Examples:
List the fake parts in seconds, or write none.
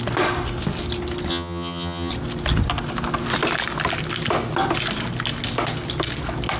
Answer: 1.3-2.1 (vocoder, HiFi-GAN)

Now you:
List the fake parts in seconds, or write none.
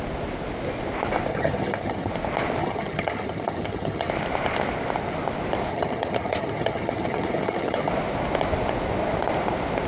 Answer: 1.3-2.1 (vocoder, HiFi-GAN); 2.6-4.1; 5.7-7.9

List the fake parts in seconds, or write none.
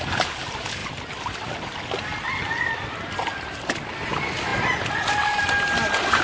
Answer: none